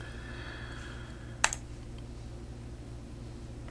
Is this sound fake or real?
real